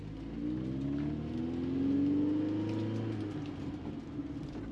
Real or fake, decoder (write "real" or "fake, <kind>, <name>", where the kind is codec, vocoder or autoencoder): real